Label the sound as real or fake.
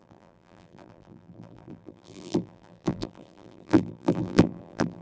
fake